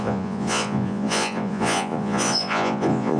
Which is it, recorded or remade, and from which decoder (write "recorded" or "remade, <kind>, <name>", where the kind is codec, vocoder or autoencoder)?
remade, vocoder, Vocos